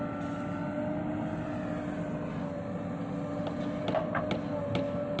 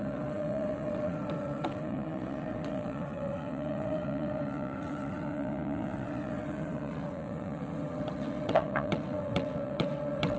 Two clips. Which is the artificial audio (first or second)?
second